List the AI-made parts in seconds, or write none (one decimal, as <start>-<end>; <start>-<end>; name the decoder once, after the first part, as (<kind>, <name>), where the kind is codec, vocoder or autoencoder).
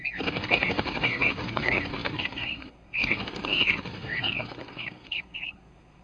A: 0.0-6.0 (codec, SNAC)